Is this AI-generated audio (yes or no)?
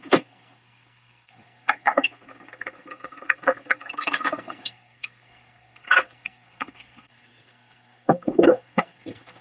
yes